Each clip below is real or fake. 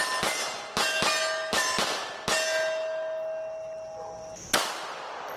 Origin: real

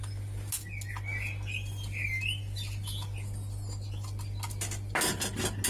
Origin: real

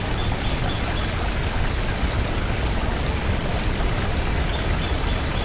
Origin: real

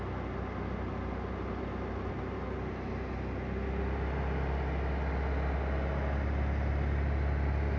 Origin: real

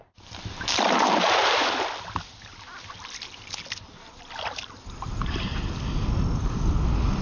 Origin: real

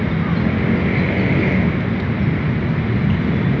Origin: real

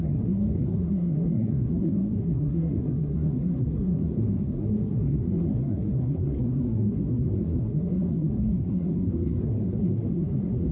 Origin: fake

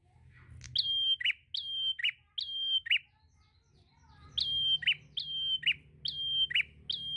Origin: real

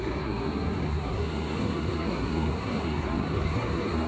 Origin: fake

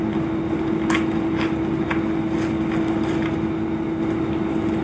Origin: real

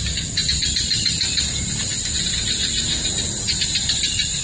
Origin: real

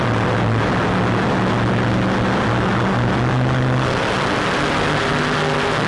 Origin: real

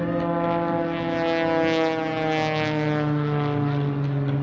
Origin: real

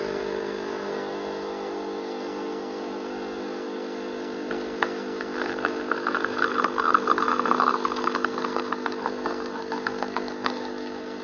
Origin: fake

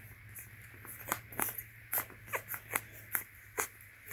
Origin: real